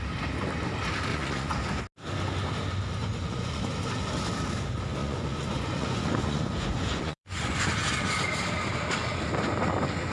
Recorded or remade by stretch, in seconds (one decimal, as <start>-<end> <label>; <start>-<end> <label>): 0.0-1.1 recorded; 1.1-1.8 remade; 1.8-3.0 recorded; 3.0-3.6 remade; 3.6-5.0 recorded; 5.0-7.7 remade; 7.7-10.1 recorded